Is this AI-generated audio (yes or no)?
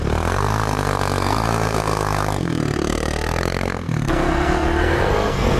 yes